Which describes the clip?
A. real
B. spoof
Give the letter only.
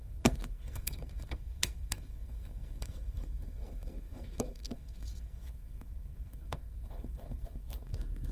B